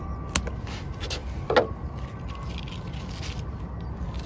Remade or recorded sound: recorded